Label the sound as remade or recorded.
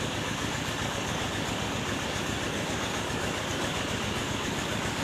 remade